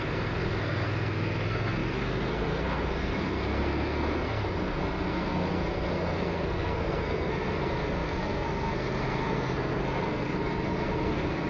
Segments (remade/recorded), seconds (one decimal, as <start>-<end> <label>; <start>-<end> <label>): 0.0-11.5 remade